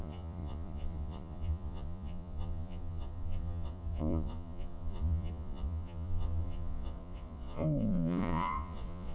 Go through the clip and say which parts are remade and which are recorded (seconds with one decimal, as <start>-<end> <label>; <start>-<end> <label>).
0.0-9.1 remade